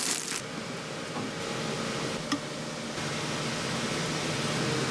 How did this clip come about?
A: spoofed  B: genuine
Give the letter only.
B